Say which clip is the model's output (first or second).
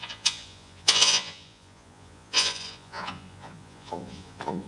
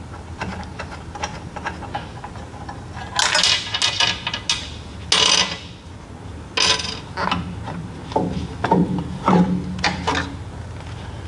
first